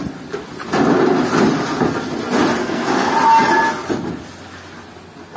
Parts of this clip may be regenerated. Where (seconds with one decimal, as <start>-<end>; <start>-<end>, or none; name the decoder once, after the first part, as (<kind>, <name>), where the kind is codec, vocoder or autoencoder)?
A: 2.6-3.1 (codec, SNAC)